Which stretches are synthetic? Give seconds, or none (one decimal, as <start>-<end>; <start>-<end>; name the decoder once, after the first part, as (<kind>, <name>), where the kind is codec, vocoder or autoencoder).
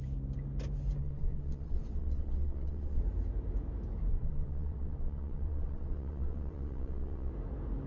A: 1.0-3.0 (vocoder, WaveNeXt); 4.1-7.3